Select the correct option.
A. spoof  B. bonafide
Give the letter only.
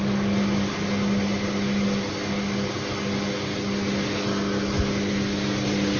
B